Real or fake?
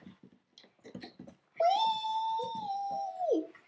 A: real